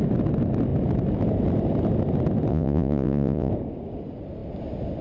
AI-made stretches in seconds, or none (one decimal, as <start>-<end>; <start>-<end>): 2.5-3.5